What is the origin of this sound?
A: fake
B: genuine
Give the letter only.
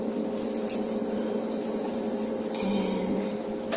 B